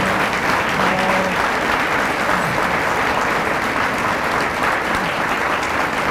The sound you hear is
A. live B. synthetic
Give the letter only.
A